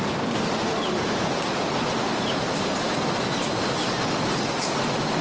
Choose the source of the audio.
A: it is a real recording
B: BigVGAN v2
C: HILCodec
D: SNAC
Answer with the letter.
A